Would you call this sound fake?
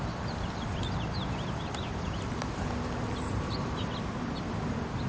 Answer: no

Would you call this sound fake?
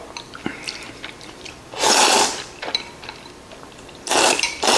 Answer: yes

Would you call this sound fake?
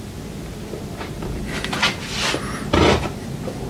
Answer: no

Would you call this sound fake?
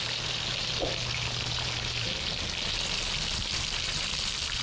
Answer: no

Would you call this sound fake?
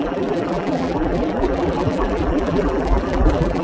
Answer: yes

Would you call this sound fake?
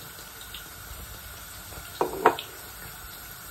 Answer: no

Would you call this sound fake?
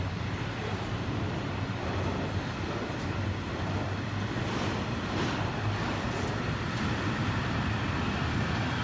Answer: yes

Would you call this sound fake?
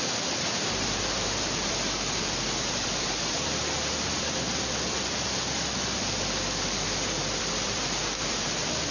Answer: yes